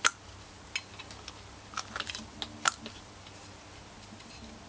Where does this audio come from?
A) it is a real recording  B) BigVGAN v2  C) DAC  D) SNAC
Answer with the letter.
A